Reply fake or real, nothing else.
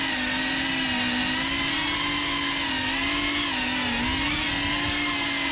real